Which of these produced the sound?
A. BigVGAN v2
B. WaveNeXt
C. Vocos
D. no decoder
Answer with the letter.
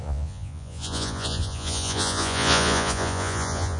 C